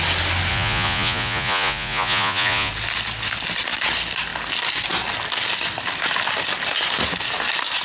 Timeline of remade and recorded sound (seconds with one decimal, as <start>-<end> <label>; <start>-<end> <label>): 0.0-0.5 recorded; 0.5-2.7 remade; 2.7-7.8 recorded